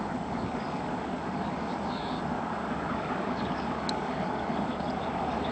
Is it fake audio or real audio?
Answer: fake